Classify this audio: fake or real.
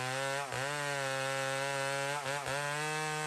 real